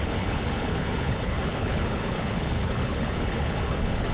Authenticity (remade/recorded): remade